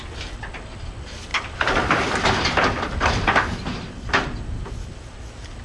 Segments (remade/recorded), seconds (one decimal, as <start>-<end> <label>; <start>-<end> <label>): 0.0-5.6 recorded